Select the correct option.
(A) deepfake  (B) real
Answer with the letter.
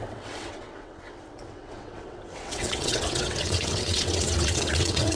A